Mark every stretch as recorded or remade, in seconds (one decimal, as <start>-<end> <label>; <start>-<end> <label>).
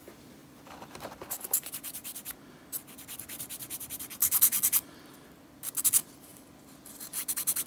0.0-0.4 recorded; 0.4-2.3 remade; 2.3-7.7 recorded